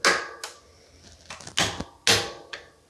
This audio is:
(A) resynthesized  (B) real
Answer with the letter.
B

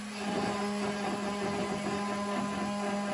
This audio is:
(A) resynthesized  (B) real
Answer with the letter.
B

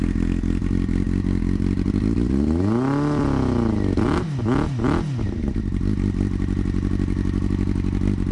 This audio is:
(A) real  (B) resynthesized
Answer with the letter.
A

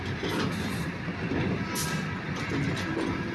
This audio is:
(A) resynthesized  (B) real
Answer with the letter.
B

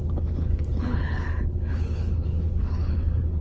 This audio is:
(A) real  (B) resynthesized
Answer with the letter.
B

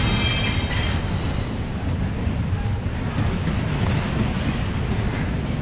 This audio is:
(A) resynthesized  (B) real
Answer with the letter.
B